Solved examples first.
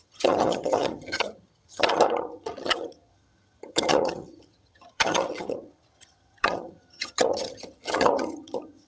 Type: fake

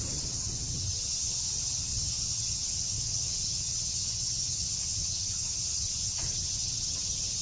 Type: fake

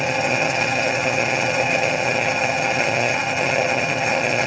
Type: fake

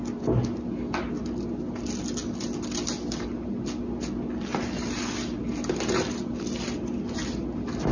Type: real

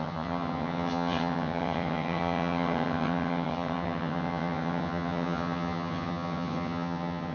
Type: fake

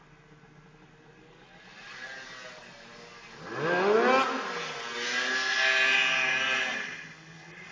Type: real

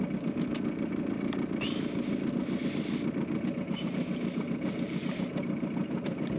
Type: real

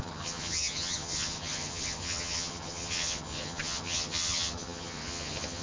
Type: fake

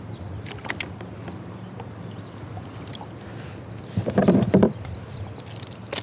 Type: real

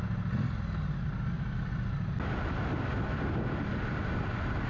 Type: real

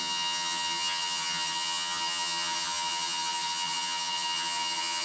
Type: fake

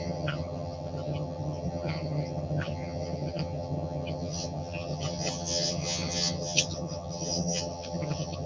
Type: fake